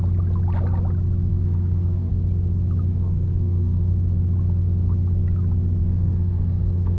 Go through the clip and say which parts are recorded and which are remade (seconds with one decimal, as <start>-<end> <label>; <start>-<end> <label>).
0.0-1.3 recorded; 1.3-2.1 remade; 2.1-2.9 recorded; 2.9-3.9 remade; 3.9-5.8 recorded; 5.8-7.0 remade